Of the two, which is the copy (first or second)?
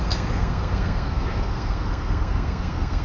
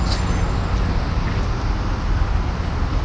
first